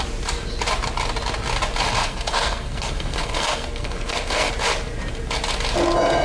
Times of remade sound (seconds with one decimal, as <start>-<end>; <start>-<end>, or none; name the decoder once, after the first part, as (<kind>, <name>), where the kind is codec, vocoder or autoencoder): 2.0-4.5 (codec, SNAC)